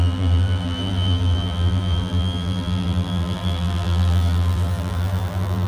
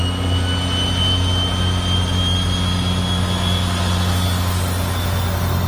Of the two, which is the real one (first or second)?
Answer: second